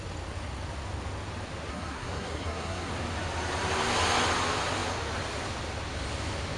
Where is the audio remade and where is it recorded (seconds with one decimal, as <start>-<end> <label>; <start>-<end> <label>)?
0.0-1.7 recorded; 1.7-2.9 remade; 2.9-6.6 recorded